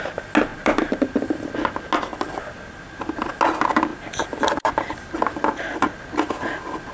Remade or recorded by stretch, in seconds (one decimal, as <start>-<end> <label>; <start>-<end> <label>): 0.0-0.5 recorded; 0.5-1.5 remade; 1.5-2.1 recorded; 2.1-2.8 remade; 2.8-3.9 recorded; 3.9-4.7 remade; 4.7-6.9 recorded